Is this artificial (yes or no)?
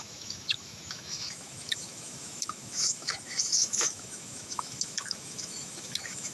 yes